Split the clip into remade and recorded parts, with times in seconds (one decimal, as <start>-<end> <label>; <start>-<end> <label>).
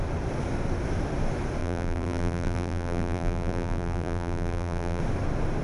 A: 0.0-1.6 recorded; 1.6-5.0 remade; 5.0-5.6 recorded